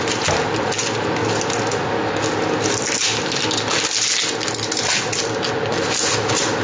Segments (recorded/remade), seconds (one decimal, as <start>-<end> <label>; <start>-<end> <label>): 0.0-6.6 recorded